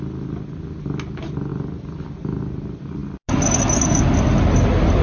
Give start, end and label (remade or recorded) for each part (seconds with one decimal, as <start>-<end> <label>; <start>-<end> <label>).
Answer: 0.0-5.0 recorded